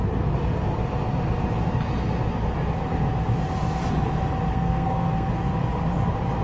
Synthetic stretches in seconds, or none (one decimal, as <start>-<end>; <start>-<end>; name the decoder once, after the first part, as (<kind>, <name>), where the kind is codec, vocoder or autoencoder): 4.5-5.3 (codec, SNAC)